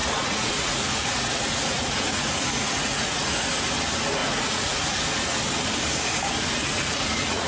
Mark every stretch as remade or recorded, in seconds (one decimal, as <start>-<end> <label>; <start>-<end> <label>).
0.0-3.3 remade; 3.3-4.2 recorded; 4.2-5.0 remade; 5.0-6.6 recorded; 6.6-7.5 remade